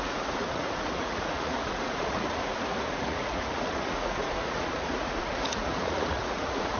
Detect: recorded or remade remade